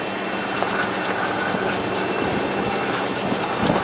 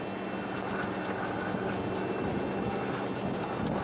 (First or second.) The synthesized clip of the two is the first